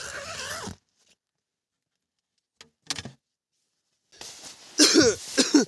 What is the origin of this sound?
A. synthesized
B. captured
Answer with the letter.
B